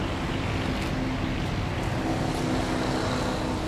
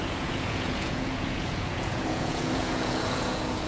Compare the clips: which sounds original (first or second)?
first